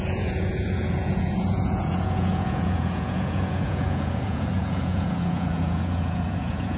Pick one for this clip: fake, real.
fake